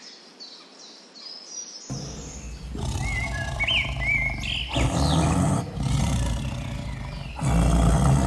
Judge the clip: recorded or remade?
recorded